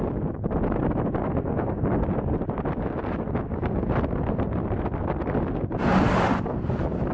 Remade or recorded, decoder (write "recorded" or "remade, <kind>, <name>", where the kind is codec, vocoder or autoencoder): recorded